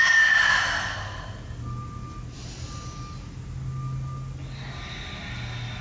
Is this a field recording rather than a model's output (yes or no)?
yes